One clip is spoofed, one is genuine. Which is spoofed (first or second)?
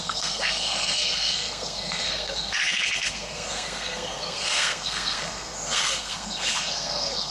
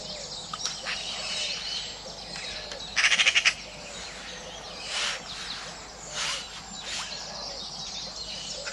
first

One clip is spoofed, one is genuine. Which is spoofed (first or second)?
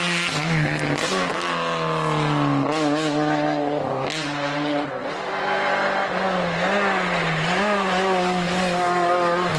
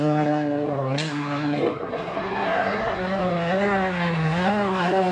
second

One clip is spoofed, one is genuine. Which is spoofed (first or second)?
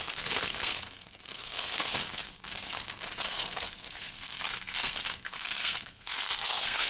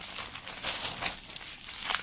first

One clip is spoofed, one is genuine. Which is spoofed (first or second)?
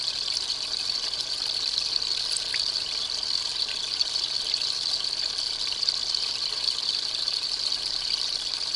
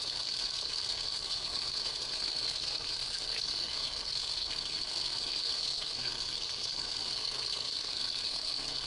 second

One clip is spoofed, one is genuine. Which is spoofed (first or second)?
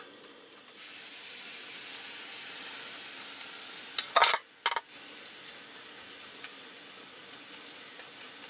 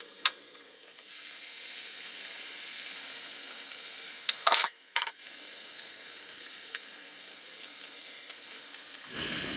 second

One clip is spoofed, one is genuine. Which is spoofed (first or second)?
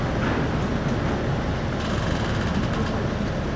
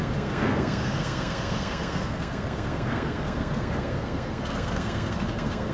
second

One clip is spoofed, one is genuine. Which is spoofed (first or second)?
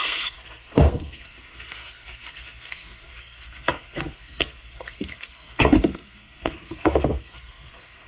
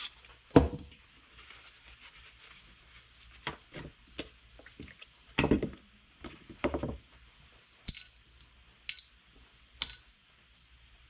first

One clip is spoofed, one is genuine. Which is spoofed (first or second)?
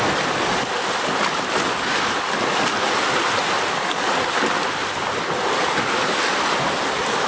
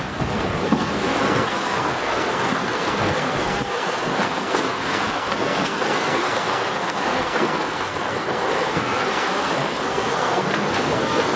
second